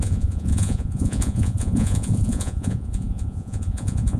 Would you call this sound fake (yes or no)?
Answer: yes